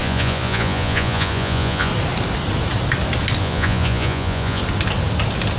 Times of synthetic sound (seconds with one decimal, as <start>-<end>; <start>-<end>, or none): 0.0-1.9; 3.4-4.6